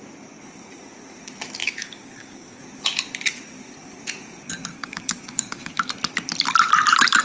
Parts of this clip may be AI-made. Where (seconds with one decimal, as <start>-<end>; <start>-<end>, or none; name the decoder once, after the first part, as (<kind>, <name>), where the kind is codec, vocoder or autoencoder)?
1.6-2.6 (codec, DAC); 4.7-5.9